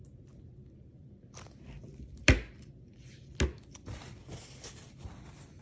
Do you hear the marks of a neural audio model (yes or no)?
no